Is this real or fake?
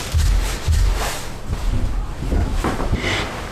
real